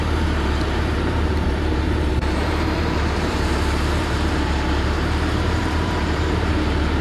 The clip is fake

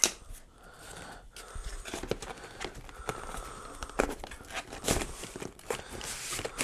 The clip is real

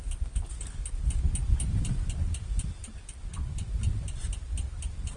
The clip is real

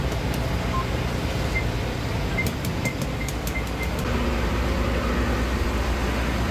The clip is real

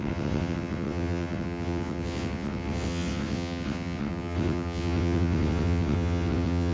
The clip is fake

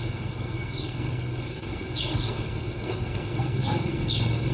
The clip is fake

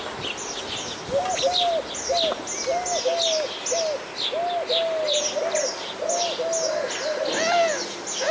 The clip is real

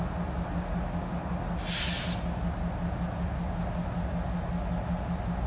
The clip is real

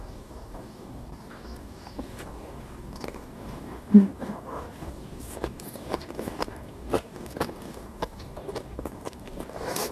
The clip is fake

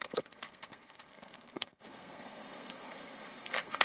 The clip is fake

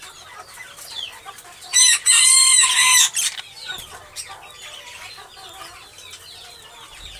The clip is real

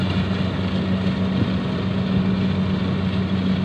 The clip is real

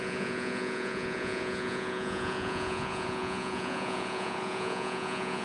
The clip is fake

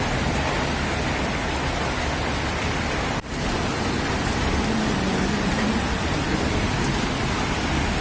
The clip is real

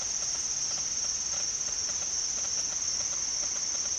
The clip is real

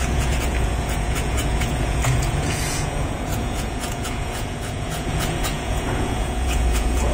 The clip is fake